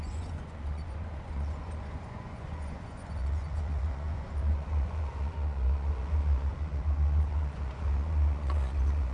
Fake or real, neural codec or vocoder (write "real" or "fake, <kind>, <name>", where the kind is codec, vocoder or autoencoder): fake, vocoder, Vocos